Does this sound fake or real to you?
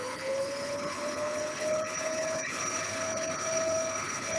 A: fake